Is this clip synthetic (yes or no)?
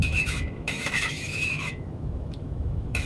yes